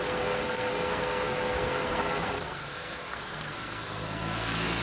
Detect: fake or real fake